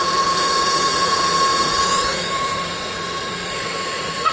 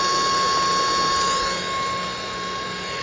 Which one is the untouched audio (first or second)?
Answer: second